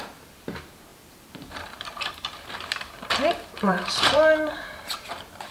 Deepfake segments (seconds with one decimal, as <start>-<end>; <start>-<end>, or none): 0.0-5.5